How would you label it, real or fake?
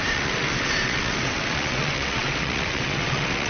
fake